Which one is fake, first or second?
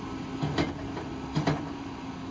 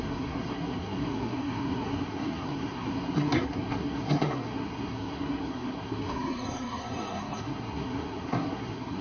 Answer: second